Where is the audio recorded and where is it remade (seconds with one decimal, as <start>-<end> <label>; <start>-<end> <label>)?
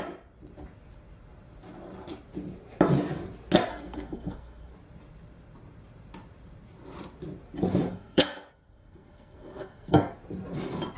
0.0-3.7 recorded; 3.7-4.7 remade; 4.7-7.9 recorded; 7.9-10.1 remade; 10.1-11.0 recorded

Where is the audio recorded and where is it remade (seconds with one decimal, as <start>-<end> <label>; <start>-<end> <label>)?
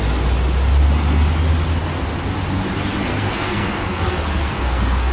0.0-3.1 recorded; 3.1-5.1 remade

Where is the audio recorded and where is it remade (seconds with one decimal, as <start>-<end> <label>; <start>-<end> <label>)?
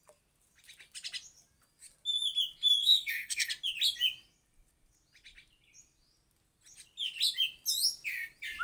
0.0-2.8 recorded; 2.8-3.5 remade; 3.5-8.6 recorded